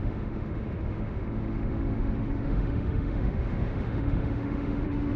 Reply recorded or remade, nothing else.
remade